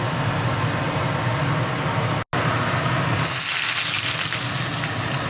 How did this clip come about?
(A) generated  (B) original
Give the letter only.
B